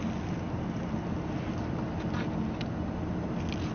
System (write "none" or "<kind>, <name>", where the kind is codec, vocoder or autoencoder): none